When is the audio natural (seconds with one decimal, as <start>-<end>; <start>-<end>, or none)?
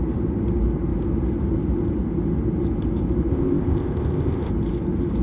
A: 0.0-3.3; 4.5-5.2